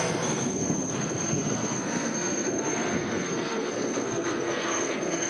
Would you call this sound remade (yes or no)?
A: yes